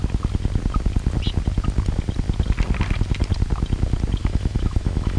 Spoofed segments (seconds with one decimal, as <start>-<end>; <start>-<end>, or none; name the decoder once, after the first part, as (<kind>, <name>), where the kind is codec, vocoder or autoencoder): 4.2-5.2 (autoencoder, DAC-VAE)